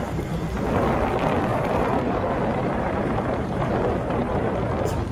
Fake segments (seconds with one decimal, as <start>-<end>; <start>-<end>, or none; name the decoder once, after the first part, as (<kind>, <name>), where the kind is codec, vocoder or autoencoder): 1.5-4.6 (vocoder, BigVGAN v2)

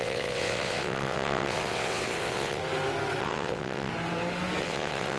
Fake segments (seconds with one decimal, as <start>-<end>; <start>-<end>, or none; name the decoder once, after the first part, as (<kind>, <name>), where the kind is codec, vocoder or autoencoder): 0.0-2.6 (vocoder, WaveNeXt); 3.2-3.9; 4.6-5.2

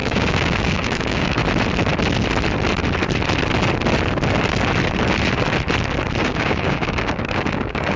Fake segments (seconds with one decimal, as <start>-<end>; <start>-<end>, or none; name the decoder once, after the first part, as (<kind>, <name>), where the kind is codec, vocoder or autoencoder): 0.0-1.4 (codec, DAC); 6.2-8.0